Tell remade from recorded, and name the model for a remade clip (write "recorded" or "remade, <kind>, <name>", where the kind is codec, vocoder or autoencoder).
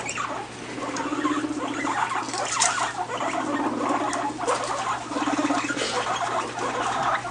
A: recorded